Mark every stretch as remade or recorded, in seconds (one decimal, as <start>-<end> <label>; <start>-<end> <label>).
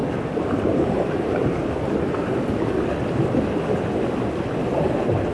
0.0-0.6 recorded; 0.6-2.3 remade; 2.3-4.8 recorded; 4.8-5.3 remade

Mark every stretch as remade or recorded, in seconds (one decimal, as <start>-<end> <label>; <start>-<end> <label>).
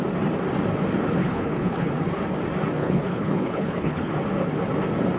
0.0-1.2 recorded; 1.2-1.9 remade; 1.9-2.8 recorded; 2.8-4.1 remade; 4.1-5.2 recorded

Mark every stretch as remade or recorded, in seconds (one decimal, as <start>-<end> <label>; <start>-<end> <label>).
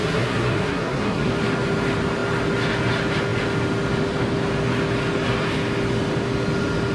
0.0-1.3 remade; 1.3-6.9 recorded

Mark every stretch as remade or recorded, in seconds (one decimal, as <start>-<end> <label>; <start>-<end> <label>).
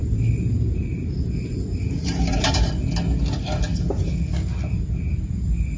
0.0-2.7 remade; 2.7-5.8 recorded